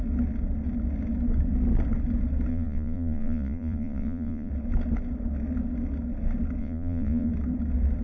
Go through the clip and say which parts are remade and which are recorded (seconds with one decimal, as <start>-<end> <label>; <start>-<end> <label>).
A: 0.0-2.5 recorded; 2.5-4.5 remade; 4.5-6.6 recorded; 6.6-7.3 remade; 7.3-8.0 recorded